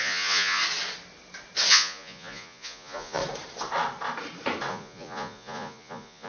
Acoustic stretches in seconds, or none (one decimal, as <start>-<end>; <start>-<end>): 0.6-1.7; 3.2-4.7